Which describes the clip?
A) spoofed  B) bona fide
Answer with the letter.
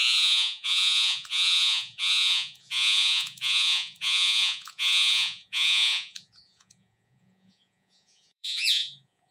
A